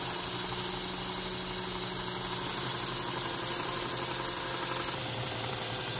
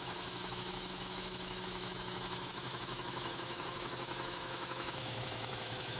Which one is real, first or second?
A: first